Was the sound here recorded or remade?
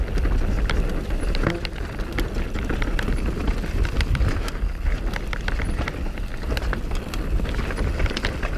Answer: recorded